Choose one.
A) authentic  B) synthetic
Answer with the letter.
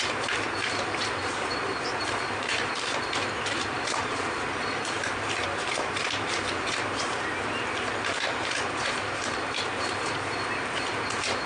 B